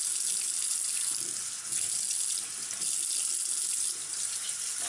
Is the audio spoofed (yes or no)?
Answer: no